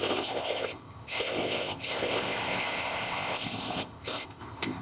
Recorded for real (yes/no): no